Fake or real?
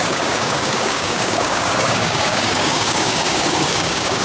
fake